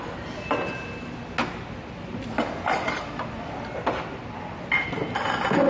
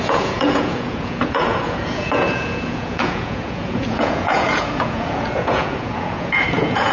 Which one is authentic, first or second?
first